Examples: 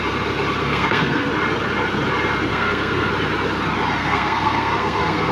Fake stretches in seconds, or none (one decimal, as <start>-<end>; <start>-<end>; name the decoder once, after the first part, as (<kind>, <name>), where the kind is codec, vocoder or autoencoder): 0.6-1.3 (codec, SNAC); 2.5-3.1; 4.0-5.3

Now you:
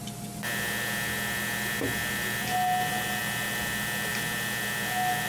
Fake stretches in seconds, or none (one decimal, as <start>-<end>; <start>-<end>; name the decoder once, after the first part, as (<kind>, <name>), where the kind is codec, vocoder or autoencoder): none

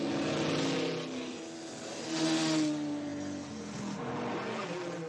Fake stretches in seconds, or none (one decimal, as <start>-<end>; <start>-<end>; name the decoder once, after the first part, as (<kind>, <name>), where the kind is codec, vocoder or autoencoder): none